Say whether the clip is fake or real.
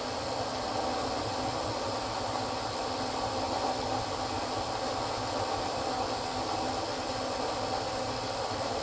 real